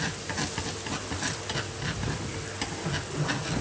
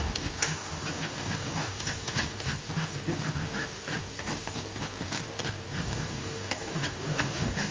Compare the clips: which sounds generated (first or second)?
second